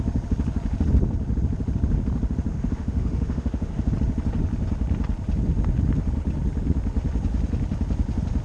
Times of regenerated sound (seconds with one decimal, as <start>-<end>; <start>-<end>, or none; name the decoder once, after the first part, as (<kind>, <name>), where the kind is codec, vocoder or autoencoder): 2.5-3.9 (autoencoder, DAC-VAE)